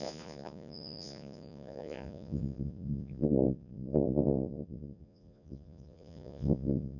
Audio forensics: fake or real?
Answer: fake